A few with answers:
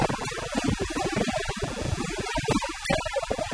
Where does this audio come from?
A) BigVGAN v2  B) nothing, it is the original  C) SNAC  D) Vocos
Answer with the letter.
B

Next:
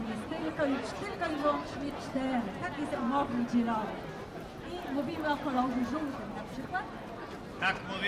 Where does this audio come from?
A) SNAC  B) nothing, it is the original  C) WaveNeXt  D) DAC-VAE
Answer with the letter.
B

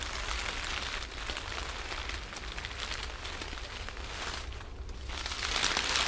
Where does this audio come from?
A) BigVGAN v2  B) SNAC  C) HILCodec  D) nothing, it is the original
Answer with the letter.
D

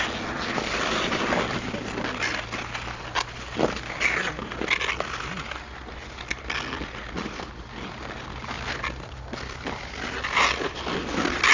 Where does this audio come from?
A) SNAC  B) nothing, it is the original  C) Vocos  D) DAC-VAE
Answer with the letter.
B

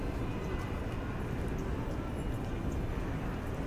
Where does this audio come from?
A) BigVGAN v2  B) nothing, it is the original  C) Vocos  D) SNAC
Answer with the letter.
B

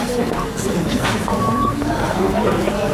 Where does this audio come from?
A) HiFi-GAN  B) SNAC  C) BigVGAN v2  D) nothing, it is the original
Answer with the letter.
B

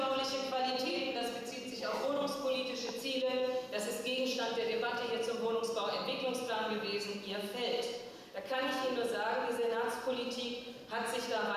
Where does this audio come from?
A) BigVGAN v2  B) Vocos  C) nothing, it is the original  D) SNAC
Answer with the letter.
C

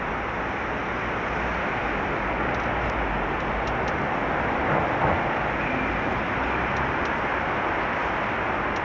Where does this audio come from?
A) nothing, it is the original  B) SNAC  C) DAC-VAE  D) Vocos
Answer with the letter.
A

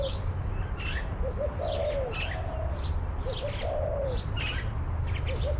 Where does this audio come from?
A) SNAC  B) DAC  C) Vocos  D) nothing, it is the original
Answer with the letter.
D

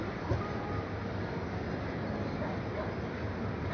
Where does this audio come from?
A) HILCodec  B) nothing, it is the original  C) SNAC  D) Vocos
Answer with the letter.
B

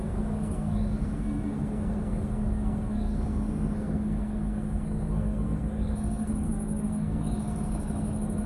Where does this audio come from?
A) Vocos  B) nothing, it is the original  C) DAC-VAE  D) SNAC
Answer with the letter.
D